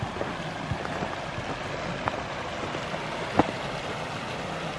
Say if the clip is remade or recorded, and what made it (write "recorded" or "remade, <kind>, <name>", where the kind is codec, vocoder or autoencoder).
recorded